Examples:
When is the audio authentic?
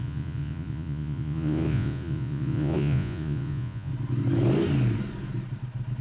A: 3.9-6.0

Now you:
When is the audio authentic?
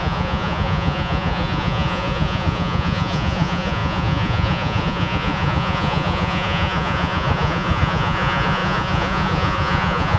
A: none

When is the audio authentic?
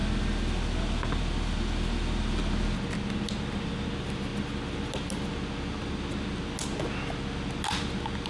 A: 0.0-8.3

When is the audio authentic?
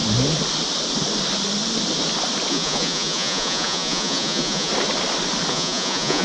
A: 0.0-2.5; 4.7-5.5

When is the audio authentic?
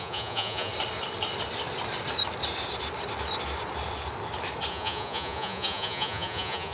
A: 0.7-4.7